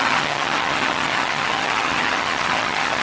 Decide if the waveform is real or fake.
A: fake